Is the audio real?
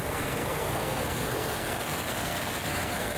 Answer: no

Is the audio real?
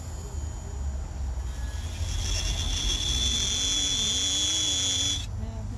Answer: yes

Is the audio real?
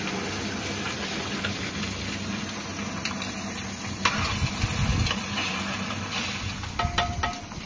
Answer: yes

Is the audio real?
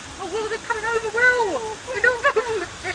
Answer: no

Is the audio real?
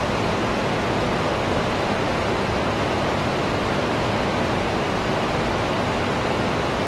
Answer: no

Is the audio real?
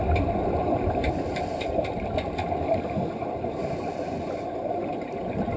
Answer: yes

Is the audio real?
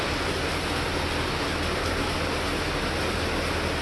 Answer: yes